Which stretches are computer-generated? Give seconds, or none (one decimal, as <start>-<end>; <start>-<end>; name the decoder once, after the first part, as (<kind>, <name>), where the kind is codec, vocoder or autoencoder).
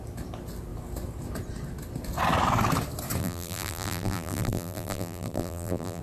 3.2-6.0 (vocoder, BigVGAN v2)